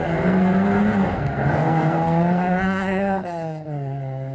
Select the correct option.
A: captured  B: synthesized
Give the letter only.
B